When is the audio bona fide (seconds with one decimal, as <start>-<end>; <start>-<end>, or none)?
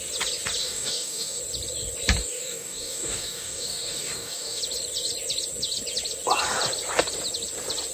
0.0-0.6; 1.4-2.2; 4.6-7.9